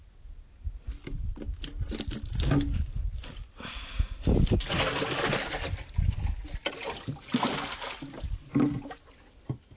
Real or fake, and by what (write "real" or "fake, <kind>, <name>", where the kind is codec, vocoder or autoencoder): real